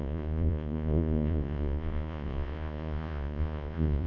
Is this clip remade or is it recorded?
remade